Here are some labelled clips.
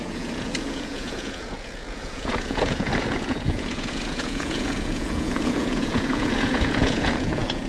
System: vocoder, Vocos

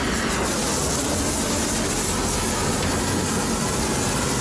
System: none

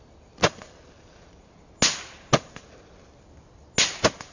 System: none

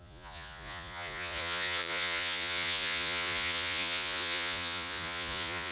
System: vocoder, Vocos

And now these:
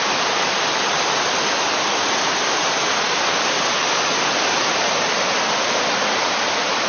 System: none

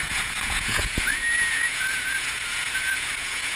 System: vocoder, Vocos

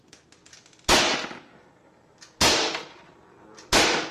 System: none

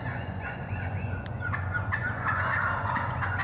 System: vocoder, Vocos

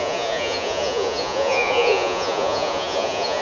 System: vocoder, Vocos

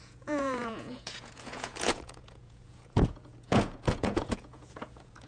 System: vocoder, Vocos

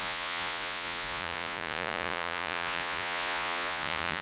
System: vocoder, Vocos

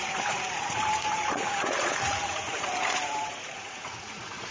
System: vocoder, Vocos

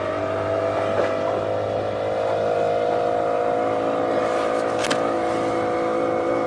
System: none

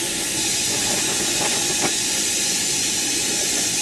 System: vocoder, Vocos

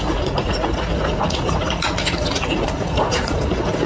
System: vocoder, Vocos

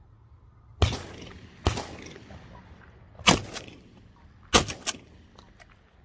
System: none